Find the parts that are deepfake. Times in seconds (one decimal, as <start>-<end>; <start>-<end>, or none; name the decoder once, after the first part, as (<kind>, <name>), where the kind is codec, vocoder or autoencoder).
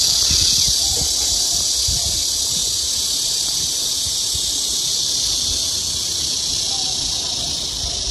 none